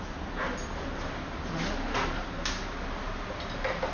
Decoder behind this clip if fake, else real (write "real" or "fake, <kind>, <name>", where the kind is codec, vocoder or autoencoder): real